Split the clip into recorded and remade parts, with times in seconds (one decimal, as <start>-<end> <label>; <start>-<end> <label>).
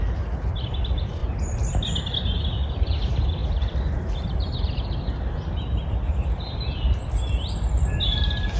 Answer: 0.0-8.6 recorded